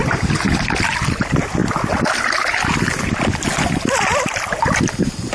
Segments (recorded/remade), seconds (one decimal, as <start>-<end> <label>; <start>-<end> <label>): 0.0-5.3 recorded